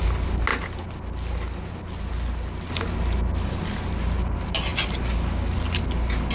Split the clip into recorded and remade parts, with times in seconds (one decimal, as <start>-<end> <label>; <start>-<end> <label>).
0.0-6.3 recorded